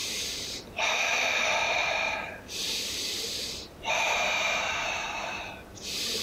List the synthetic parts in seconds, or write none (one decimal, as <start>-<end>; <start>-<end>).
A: 0.0-0.9; 1.8-5.5